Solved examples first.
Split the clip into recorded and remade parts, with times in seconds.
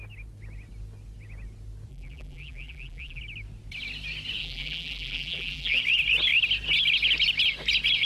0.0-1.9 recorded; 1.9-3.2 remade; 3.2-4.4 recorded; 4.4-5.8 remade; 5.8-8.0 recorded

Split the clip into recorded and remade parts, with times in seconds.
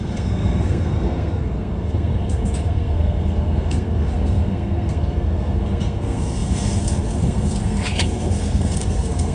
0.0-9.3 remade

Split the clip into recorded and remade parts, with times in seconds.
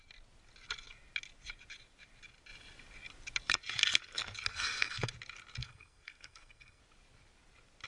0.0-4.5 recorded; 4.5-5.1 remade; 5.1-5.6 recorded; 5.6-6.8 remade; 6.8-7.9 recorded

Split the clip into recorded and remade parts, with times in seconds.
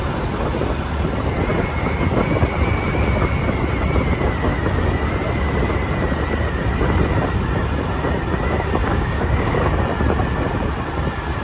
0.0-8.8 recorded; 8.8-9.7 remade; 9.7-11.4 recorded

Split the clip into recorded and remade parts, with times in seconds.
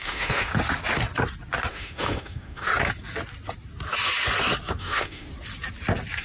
0.0-0.5 remade; 0.5-1.7 recorded; 1.7-2.7 remade; 2.7-4.8 recorded; 4.8-5.3 remade; 5.3-6.2 recorded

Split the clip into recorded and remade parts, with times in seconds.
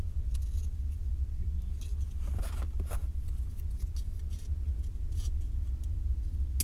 0.0-6.6 recorded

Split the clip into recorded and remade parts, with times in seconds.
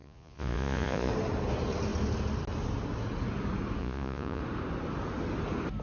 0.0-1.1 remade; 1.1-3.8 recorded; 3.8-4.4 remade; 4.4-5.8 recorded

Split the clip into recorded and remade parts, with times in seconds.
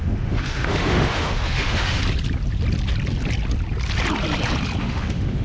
0.0-2.0 remade; 2.0-4.8 recorded; 4.8-5.4 remade